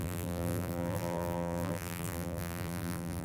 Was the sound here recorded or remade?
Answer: remade